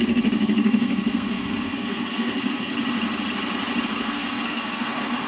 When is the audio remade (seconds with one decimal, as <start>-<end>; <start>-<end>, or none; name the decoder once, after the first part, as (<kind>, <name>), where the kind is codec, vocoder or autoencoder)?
0.0-2.7 (codec, SNAC); 3.8-5.3